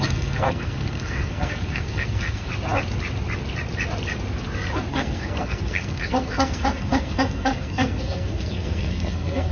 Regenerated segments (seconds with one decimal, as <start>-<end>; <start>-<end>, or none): 0.0-2.5; 4.9-9.5